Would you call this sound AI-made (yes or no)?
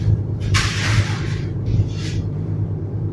yes